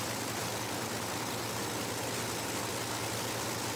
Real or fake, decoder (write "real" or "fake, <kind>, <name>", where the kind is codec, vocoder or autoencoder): real